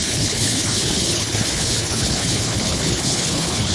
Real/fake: fake